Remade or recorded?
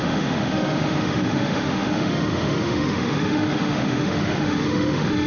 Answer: remade